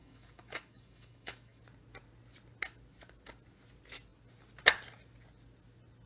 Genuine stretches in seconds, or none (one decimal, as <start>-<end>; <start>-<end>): 1.6-6.1